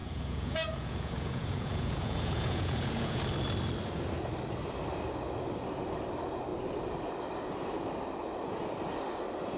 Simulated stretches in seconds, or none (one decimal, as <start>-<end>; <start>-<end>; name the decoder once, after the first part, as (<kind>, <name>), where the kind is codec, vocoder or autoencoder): 0.0-3.2 (vocoder, Vocos)